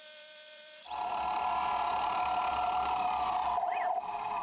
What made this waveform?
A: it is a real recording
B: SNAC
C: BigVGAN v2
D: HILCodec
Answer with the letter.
C